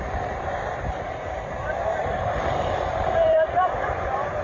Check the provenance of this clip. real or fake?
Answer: fake